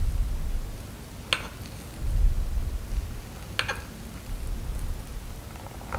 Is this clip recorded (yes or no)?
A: yes